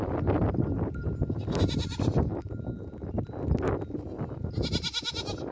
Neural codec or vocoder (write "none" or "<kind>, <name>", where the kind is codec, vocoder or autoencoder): none